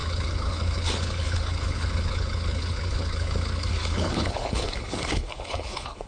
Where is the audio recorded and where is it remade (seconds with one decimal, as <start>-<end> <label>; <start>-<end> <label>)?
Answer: 0.0-6.1 remade